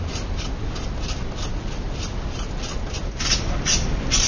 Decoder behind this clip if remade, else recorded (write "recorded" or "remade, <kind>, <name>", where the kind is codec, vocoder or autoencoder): recorded